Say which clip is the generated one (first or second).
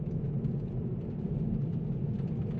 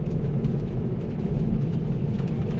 second